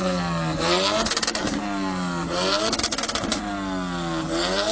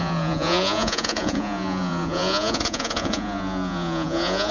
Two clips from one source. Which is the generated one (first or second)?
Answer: second